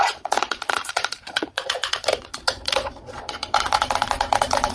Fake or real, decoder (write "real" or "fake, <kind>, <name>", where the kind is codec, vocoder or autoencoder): fake, vocoder, Vocos